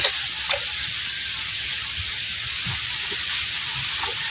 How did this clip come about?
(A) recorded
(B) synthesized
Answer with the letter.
A